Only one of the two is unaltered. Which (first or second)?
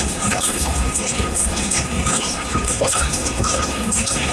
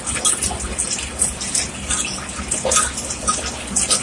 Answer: second